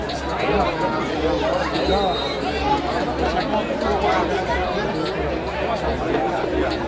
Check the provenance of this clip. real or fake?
real